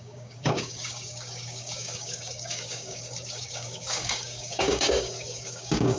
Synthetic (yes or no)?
yes